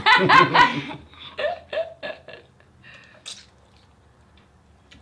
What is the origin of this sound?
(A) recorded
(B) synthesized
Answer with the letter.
A